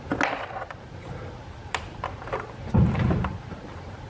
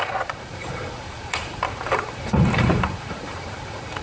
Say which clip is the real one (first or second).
first